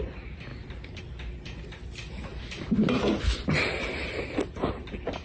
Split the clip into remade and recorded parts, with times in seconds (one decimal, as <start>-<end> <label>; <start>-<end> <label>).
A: 0.0-5.2 recorded